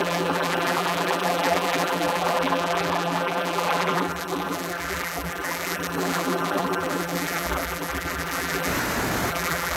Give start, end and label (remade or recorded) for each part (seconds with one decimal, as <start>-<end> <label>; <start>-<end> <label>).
0.0-8.7 remade; 8.7-9.3 recorded; 9.3-9.8 remade